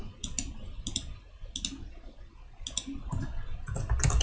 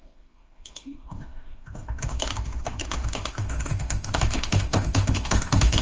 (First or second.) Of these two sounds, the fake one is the second